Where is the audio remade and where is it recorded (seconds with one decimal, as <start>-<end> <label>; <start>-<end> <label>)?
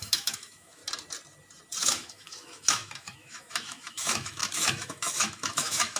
0.0-0.8 remade; 0.8-1.8 recorded; 1.8-6.0 remade